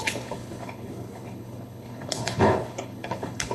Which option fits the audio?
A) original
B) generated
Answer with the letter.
B